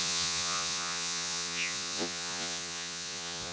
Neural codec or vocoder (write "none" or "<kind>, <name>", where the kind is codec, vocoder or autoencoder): vocoder, Vocos